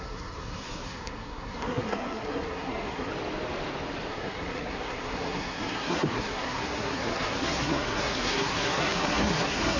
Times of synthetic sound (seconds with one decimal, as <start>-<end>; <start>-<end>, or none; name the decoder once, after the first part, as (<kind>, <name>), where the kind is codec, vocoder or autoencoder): 0.0-3.1 (codec, SNAC); 4.1-9.8